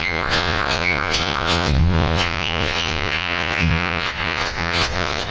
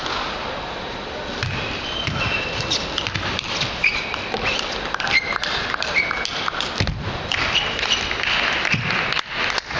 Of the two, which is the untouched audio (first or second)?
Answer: second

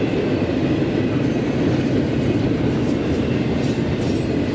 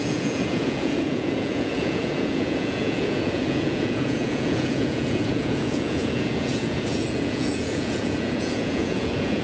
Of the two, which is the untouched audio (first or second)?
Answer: first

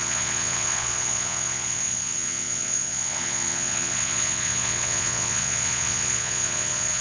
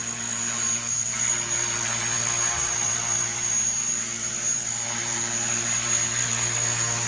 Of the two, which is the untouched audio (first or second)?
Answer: second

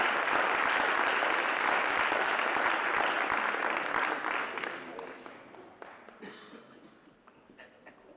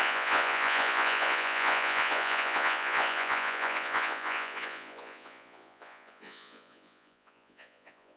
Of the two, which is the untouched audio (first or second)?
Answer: first